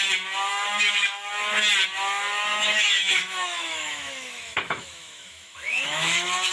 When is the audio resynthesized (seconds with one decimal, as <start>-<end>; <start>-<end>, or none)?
0.5-1.3; 2.5-6.5